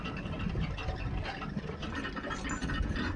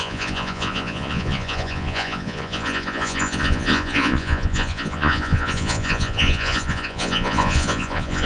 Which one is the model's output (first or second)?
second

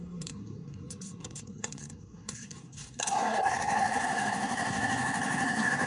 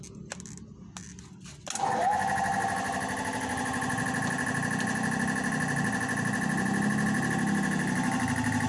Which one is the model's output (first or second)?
first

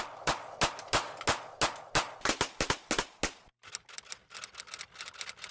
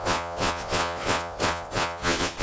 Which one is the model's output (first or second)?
second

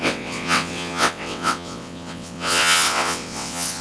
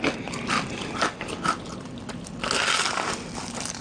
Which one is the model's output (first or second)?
first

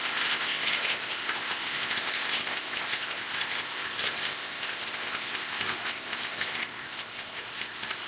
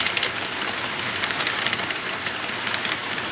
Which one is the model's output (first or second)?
first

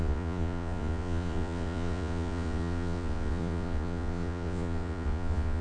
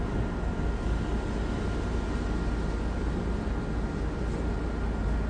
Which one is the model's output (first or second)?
first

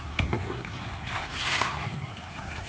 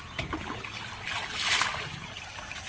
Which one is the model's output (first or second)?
first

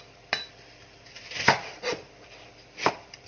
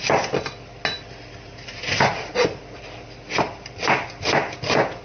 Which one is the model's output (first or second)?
first